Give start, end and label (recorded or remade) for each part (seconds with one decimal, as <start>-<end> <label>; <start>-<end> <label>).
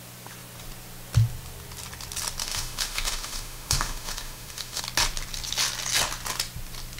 0.0-2.4 recorded; 2.4-4.8 remade; 4.8-7.0 recorded